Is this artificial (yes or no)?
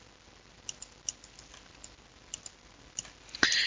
no